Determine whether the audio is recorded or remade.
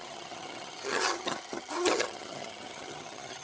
remade